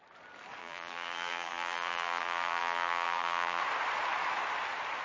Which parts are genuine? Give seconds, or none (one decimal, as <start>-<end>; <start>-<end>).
0.0-0.6; 3.6-5.0